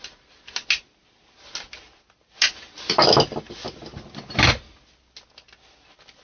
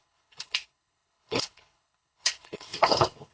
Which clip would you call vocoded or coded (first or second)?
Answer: second